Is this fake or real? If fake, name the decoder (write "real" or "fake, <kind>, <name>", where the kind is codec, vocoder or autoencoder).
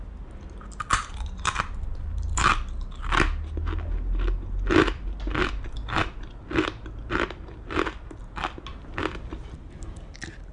real